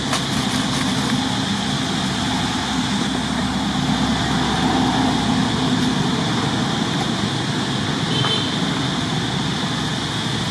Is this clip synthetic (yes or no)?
no